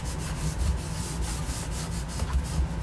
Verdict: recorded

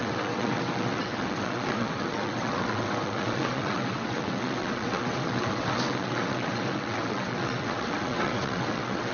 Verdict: remade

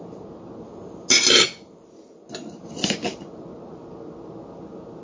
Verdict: recorded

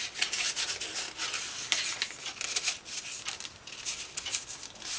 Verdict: recorded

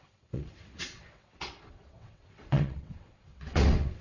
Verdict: remade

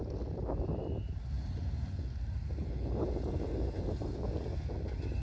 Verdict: recorded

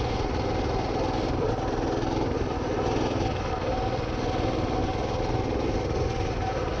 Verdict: recorded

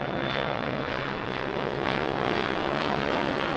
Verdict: remade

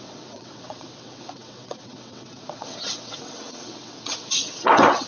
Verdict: remade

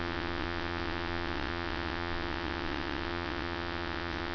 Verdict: remade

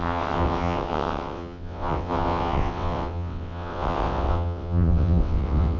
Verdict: remade